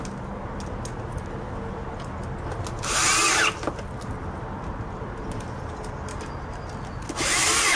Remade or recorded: recorded